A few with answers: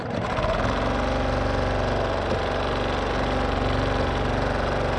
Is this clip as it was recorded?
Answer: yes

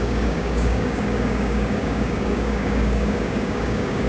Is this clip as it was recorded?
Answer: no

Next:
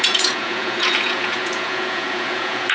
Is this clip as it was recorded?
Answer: no